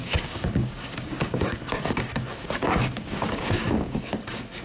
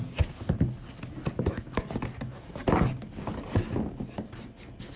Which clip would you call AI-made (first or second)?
first